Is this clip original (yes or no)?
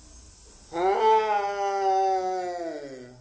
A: yes